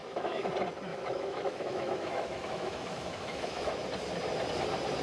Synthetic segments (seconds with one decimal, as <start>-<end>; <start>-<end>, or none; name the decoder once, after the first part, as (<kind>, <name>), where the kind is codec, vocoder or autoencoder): 0.0-0.5 (autoencoder, DAC-VAE); 0.9-3.7